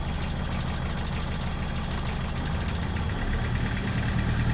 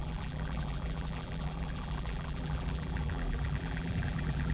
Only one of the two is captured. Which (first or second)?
first